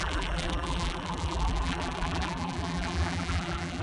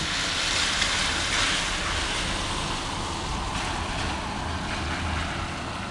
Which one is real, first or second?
second